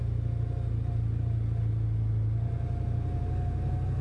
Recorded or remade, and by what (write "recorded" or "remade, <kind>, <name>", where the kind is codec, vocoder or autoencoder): recorded